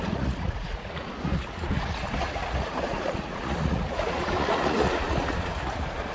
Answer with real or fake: fake